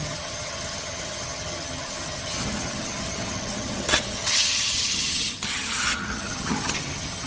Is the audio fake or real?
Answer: fake